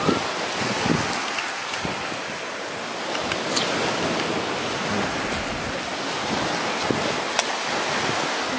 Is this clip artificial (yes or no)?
no